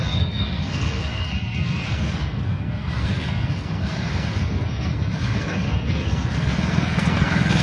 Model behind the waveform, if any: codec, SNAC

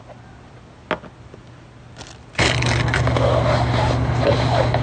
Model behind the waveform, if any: none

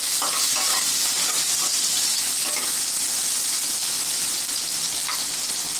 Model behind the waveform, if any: none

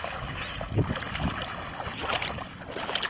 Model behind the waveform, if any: none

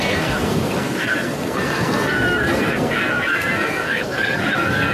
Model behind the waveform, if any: codec, SNAC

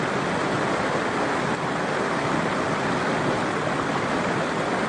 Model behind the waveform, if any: none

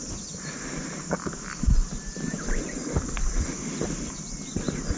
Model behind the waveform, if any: none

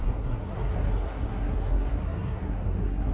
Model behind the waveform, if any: codec, SNAC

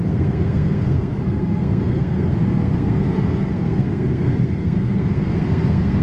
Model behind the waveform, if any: codec, SNAC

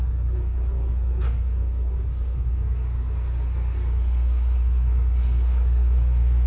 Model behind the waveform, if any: codec, SNAC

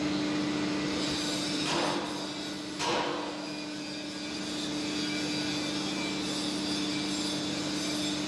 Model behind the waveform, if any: none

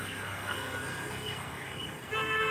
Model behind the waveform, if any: codec, SNAC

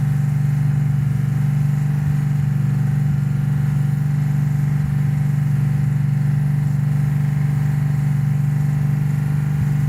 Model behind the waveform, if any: none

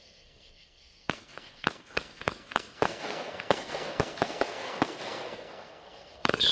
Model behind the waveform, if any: codec, SNAC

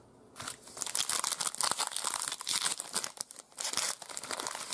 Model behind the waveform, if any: none